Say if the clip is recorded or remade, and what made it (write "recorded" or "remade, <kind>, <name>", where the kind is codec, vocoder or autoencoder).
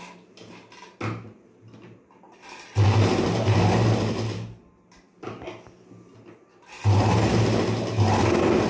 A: recorded